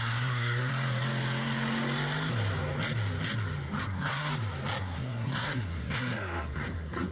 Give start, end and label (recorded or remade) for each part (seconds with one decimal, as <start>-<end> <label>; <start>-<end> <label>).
0.0-0.7 remade; 0.7-3.8 recorded; 3.8-4.3 remade; 4.3-4.8 recorded; 4.8-7.1 remade